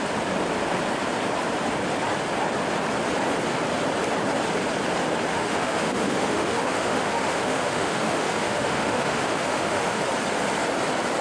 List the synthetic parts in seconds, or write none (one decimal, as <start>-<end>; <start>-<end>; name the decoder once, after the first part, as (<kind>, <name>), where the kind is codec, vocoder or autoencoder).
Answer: 5.3-10.0 (autoencoder, DAC-VAE)